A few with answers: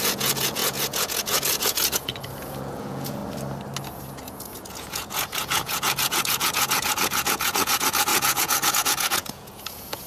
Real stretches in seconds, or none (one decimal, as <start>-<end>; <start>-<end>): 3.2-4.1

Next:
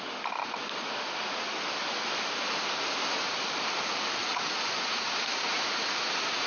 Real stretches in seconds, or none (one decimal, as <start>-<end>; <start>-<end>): 0.0-0.8; 1.5-4.2

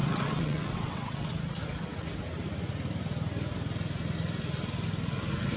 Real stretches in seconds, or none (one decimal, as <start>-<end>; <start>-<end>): 1.3-5.6

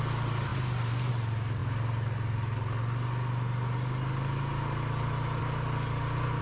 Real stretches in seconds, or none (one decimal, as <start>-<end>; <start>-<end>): 0.0-6.4

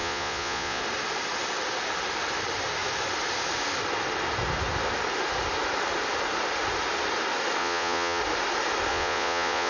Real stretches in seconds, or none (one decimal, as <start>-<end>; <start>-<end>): 0.8-7.6; 8.2-8.9

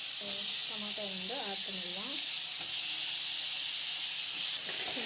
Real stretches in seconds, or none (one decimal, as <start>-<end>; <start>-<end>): 0.0-5.1